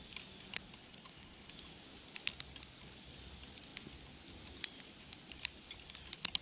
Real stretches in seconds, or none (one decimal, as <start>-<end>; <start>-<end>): 0.0-0.8; 1.5-6.4